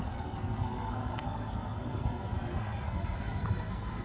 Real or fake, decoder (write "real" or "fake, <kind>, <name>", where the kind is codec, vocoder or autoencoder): fake, codec, SNAC